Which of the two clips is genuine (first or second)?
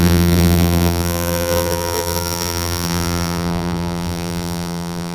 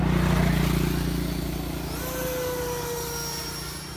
second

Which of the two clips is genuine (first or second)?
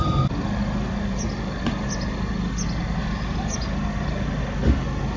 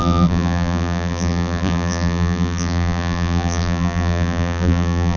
first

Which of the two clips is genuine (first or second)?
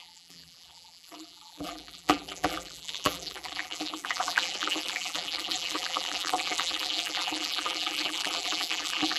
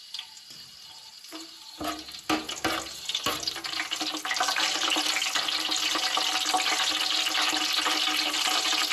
second